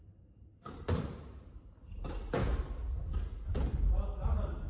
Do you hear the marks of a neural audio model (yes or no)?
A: no